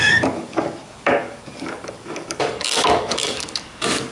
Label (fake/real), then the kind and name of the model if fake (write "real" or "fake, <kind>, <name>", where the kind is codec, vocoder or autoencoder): fake, codec, DAC